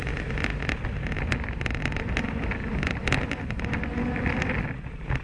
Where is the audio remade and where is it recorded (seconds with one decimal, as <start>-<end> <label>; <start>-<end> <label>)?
0.0-0.5 remade; 0.5-3.6 recorded; 3.6-5.2 remade